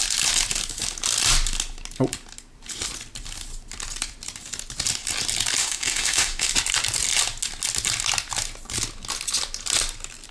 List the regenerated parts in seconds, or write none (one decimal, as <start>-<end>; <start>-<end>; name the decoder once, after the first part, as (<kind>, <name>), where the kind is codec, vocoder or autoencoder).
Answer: 5.6-6.5 (autoencoder, DAC-VAE)